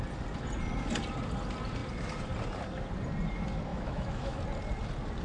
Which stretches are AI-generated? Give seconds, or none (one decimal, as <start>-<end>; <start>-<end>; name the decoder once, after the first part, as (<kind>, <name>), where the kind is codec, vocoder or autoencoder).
3.7-4.4 (autoencoder, DAC-VAE)